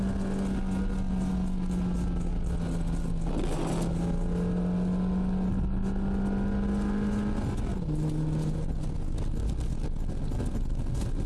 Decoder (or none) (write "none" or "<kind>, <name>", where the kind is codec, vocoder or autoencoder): none